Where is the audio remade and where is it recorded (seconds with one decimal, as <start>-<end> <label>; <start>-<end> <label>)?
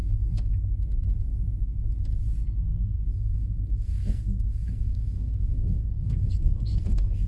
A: 0.0-2.7 recorded; 2.7-7.3 remade